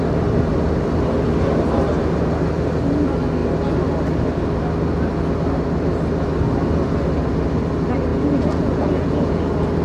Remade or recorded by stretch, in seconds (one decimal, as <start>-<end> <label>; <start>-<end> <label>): 0.0-8.1 recorded; 8.1-9.4 remade; 9.4-9.8 recorded